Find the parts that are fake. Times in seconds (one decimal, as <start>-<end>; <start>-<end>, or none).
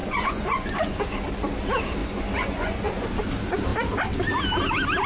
0.0-1.0; 2.0-3.1